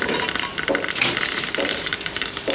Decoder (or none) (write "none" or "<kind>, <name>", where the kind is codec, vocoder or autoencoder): vocoder, BigVGAN v2